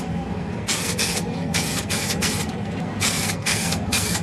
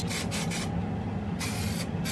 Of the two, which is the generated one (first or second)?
first